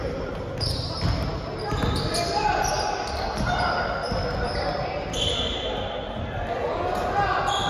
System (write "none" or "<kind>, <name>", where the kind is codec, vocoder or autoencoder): none